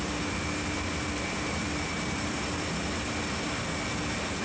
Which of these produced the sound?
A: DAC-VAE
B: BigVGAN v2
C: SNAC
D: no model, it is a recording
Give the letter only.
B